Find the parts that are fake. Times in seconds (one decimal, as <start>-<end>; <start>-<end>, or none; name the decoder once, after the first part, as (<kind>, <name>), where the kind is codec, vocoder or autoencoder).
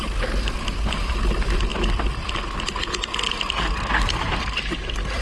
none